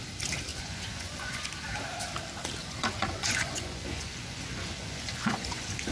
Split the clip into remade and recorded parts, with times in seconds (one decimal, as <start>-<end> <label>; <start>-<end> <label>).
0.0-0.5 recorded; 0.5-1.5 remade; 1.5-2.6 recorded; 2.6-5.9 remade